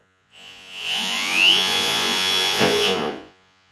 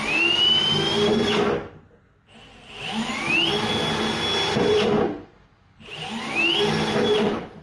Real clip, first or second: second